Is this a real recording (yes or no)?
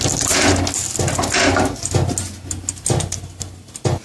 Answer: yes